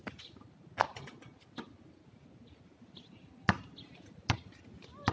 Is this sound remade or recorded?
recorded